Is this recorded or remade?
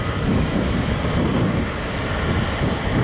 recorded